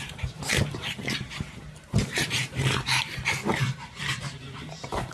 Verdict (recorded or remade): remade